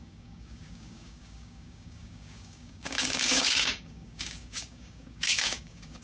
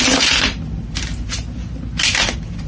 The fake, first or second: first